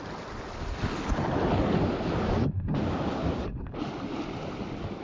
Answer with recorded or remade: recorded